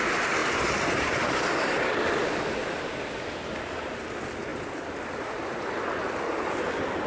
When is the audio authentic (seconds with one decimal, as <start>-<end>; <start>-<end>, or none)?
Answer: 0.0-2.6; 3.8-4.5; 5.5-7.1